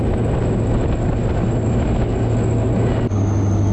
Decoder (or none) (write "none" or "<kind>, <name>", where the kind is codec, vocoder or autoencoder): none